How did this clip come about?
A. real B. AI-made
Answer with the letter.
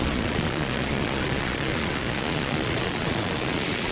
B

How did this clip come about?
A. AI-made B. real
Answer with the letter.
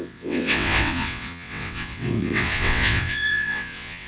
A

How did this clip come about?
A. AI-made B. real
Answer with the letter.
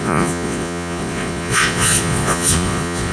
A